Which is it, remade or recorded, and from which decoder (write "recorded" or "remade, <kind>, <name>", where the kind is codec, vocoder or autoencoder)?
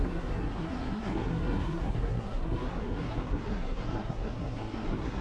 remade, codec, SNAC